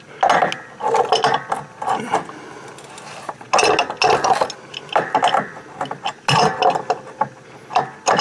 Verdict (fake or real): real